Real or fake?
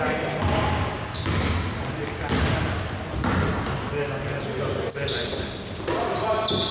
real